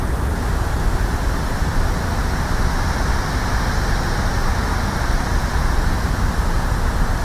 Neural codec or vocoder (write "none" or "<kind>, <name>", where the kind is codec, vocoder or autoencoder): none